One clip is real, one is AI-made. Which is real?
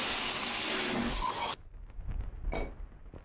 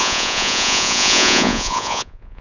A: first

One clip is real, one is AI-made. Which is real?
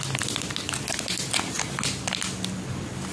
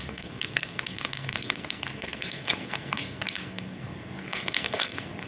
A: first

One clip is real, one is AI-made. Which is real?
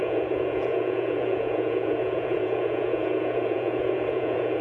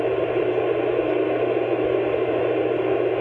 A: second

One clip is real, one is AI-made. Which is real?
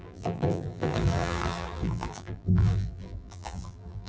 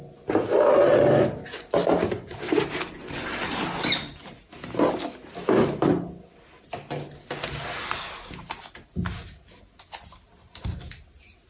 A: second